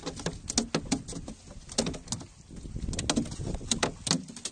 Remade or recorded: recorded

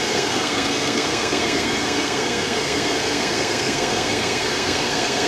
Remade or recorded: remade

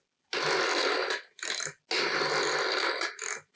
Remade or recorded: recorded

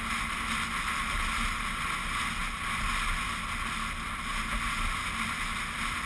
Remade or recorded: recorded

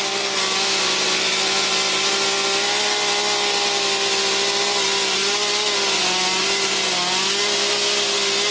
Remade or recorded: recorded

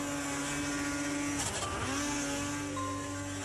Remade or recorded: recorded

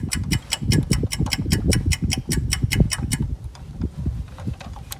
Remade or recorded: remade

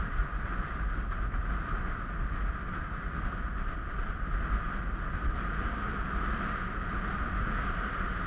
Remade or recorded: recorded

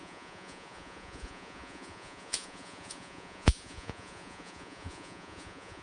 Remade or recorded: remade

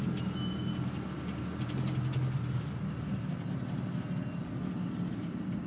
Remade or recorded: recorded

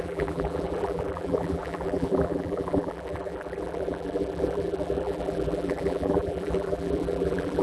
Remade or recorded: remade